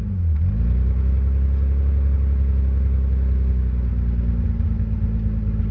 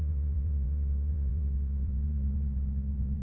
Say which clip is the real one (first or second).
first